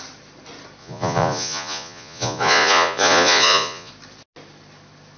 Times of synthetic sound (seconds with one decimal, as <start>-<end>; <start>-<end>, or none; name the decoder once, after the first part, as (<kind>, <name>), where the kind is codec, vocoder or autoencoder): 0.8-3.9 (vocoder, Vocos)